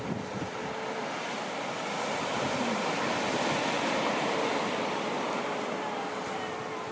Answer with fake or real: real